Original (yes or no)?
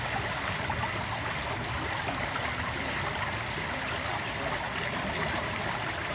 yes